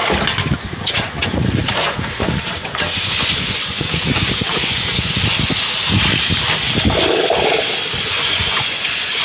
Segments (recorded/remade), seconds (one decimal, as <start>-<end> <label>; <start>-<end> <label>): 0.0-0.6 recorded; 0.6-5.2 remade; 5.2-8.0 recorded; 8.0-9.2 remade